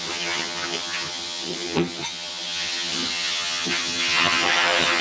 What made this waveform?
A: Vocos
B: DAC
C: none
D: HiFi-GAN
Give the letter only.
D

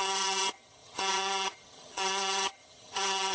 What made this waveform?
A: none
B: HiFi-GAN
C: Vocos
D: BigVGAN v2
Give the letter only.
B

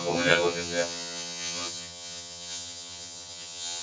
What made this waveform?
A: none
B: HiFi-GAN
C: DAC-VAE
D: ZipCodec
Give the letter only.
B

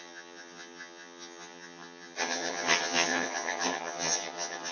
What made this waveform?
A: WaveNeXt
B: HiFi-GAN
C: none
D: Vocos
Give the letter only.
B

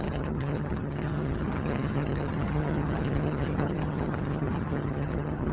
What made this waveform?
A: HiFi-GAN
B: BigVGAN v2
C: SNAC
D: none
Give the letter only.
A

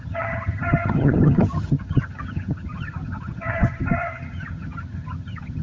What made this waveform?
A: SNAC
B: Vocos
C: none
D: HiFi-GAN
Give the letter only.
D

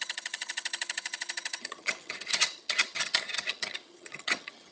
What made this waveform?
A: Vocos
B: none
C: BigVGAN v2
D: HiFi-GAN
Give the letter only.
D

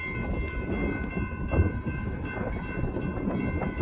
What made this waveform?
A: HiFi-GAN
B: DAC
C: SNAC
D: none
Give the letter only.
D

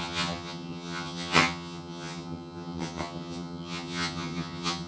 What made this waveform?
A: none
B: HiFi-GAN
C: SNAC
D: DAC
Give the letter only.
B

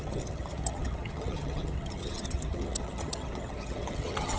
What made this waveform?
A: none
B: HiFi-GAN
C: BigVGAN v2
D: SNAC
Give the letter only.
B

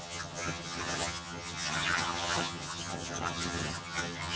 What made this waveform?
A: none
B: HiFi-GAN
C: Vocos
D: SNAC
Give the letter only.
B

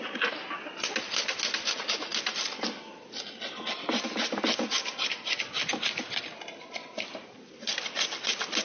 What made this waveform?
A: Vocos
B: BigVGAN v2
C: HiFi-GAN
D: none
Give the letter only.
D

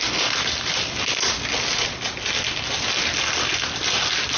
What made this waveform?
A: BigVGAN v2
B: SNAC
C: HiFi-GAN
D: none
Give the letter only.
D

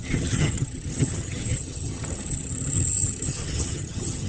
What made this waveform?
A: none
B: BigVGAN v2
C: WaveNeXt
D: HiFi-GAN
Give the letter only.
D